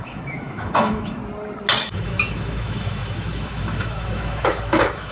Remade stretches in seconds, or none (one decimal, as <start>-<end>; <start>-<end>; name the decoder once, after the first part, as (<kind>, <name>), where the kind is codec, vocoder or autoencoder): 0.0-1.2 (autoencoder, DAC-VAE); 1.8-5.1